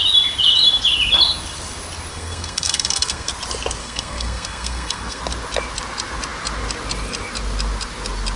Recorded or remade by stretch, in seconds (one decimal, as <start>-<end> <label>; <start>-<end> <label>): 0.0-2.1 recorded; 2.1-3.3 remade; 3.3-3.8 recorded; 3.8-5.2 remade; 5.2-8.4 recorded